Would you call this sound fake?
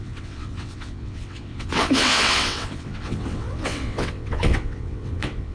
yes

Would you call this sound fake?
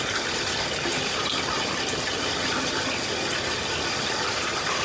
no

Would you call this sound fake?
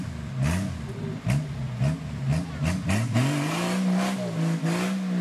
no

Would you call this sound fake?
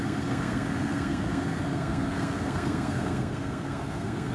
yes